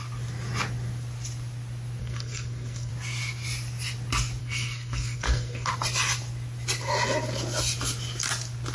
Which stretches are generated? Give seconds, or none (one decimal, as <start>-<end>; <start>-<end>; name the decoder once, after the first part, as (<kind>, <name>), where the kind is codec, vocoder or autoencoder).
2.0-2.9 (codec, SNAC); 4.4-5.7